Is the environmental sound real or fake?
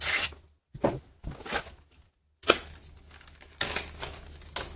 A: real